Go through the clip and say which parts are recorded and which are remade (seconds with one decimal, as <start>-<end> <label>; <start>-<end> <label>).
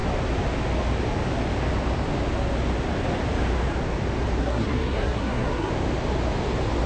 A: 0.0-4.4 recorded; 4.4-5.7 remade; 5.7-6.9 recorded